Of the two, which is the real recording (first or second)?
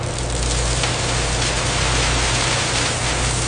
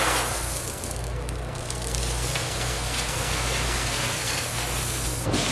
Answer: first